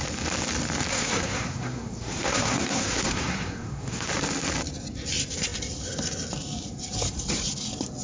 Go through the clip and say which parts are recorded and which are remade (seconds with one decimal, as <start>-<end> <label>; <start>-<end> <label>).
0.0-0.9 recorded; 0.9-4.1 remade; 4.1-8.0 recorded